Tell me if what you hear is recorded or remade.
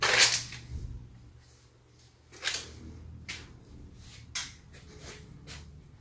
recorded